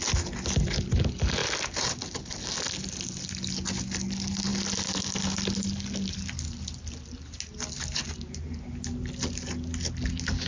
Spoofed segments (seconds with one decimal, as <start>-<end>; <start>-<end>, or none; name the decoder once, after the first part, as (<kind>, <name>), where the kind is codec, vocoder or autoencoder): none